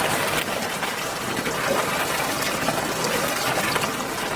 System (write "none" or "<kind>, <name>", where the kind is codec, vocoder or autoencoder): none